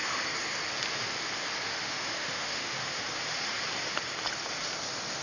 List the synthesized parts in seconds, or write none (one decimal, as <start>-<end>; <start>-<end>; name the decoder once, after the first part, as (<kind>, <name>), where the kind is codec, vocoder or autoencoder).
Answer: 1.7-3.0 (autoencoder, DAC-VAE)